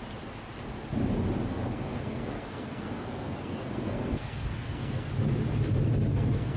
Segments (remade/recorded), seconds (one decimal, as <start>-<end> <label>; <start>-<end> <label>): 0.0-1.5 recorded; 1.5-5.1 remade; 5.1-6.1 recorded; 6.1-6.6 remade